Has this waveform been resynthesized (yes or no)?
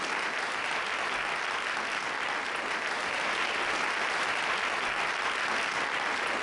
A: no